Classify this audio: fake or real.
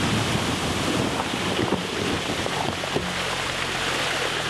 real